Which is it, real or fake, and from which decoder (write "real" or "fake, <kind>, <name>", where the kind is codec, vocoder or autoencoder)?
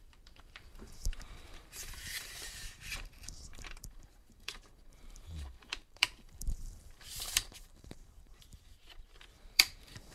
fake, vocoder, BigVGAN v2